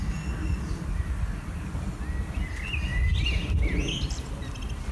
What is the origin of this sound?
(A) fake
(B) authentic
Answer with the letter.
B